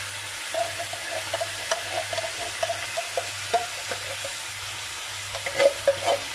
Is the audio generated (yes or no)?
no